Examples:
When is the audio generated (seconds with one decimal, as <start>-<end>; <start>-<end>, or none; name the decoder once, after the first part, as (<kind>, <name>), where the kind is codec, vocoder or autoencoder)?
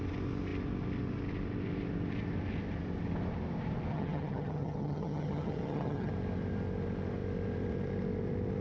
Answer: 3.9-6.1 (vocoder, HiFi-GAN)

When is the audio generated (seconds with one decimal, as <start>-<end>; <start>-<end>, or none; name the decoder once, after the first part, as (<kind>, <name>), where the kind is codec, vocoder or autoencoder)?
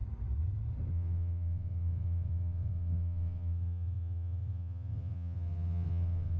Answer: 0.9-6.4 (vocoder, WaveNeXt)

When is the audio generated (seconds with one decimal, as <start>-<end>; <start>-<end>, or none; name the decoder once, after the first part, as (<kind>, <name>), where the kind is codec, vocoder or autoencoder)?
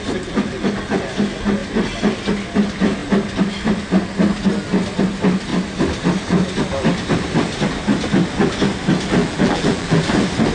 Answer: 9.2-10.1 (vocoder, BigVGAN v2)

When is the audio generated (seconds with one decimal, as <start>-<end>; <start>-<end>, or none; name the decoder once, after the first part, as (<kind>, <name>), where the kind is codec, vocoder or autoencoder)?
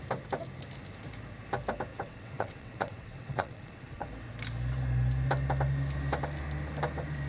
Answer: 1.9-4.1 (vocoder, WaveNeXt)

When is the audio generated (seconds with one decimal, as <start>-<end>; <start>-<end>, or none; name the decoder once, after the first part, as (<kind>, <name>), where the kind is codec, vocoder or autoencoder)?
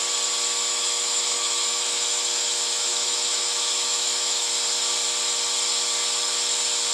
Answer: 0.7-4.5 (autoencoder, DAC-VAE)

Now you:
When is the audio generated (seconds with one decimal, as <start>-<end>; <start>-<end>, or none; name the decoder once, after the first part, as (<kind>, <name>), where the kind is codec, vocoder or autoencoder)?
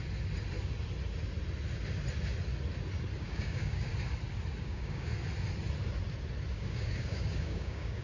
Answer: 3.2-3.9 (codec, DAC); 4.6-5.1; 6.5-8.0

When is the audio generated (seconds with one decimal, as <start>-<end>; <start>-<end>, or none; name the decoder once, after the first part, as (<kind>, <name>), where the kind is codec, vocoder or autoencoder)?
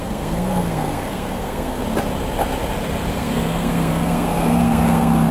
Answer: 0.0-1.8 (codec, SNAC); 3.1-5.3